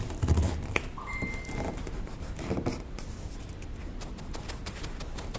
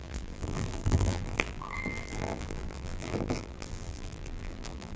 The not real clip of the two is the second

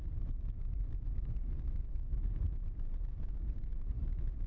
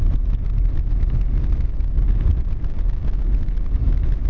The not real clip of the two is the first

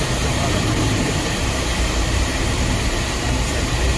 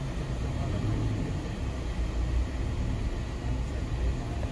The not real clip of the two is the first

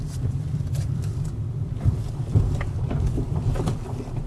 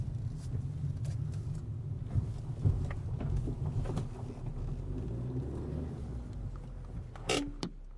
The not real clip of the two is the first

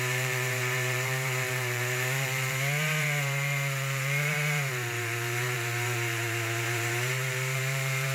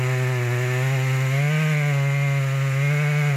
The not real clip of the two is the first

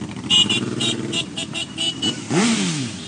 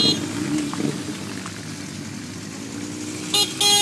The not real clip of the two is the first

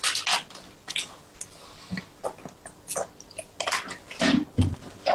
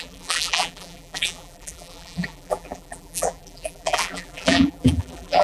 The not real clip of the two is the second